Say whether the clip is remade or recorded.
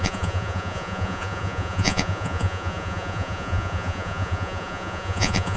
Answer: remade